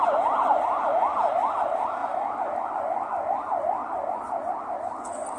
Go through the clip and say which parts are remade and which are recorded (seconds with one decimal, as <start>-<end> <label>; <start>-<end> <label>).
0.0-1.1 recorded; 1.1-1.6 remade; 1.6-2.0 recorded; 2.0-2.6 remade; 2.6-5.4 recorded